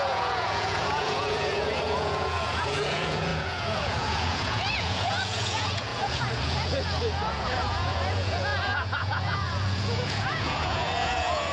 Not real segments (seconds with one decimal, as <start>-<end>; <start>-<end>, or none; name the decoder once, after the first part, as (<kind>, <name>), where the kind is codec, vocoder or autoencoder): 0.0-11.5 (vocoder, Vocos)